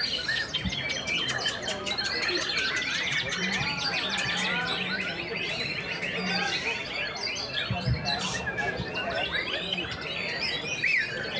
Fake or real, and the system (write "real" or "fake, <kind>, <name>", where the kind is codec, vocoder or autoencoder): real